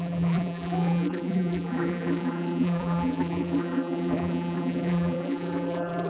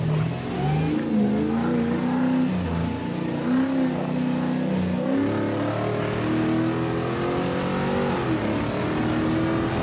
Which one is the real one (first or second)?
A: second